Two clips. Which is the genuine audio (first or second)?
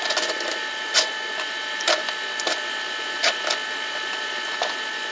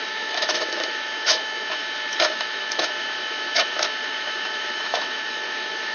first